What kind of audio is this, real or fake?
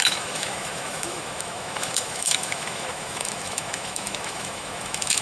fake